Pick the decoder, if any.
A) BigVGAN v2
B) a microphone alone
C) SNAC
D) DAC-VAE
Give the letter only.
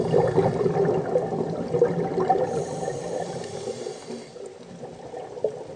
B